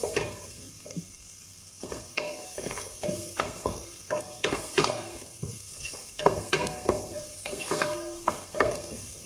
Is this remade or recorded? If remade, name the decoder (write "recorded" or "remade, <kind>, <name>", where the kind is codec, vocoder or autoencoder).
remade, codec, SNAC